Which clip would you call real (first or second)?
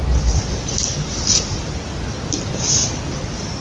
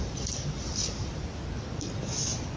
second